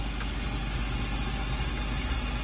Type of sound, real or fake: real